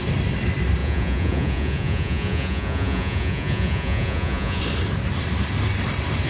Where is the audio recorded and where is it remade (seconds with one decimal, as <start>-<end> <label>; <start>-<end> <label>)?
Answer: 0.0-0.8 recorded; 0.8-4.6 remade; 4.6-6.3 recorded